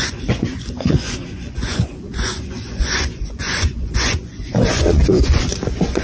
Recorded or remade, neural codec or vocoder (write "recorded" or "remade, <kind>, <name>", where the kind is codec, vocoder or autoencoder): remade, vocoder, Vocos